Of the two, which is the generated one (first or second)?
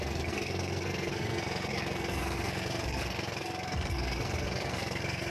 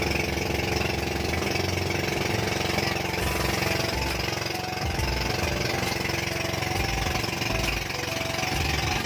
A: first